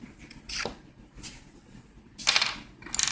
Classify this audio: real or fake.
real